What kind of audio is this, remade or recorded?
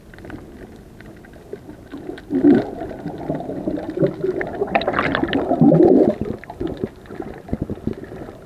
recorded